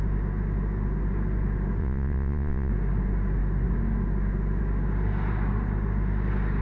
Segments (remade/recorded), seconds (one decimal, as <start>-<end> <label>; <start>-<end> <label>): 0.0-1.8 recorded; 1.8-2.7 remade; 2.7-6.6 recorded